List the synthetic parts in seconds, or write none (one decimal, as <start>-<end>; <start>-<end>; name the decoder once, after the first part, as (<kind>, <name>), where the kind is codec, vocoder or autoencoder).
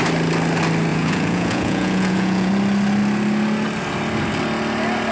0.9-2.5 (vocoder, Vocos)